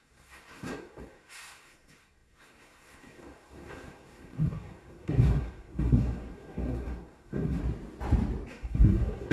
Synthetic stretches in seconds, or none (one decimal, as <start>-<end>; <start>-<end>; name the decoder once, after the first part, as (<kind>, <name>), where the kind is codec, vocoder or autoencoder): 0.0-7.6 (codec, SNAC); 8.5-9.3